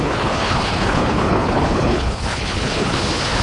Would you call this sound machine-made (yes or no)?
yes